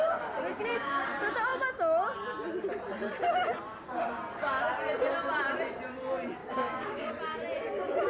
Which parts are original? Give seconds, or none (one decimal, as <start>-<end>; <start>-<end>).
0.0-0.5; 1.0-6.4; 7.1-8.1